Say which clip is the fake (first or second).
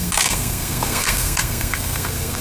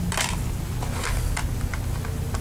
first